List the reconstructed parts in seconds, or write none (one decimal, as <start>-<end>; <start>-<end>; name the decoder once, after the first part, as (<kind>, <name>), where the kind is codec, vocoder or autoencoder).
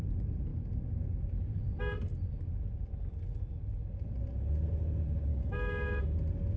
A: 5.3-6.0 (autoencoder, DAC-VAE)